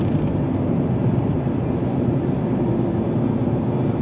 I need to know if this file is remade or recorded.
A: recorded